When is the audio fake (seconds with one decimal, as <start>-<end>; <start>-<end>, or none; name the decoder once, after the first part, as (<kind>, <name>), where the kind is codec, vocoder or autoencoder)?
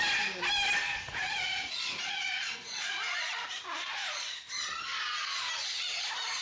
0.8-4.6 (vocoder, Vocos)